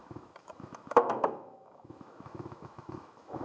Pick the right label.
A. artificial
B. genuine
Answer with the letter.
A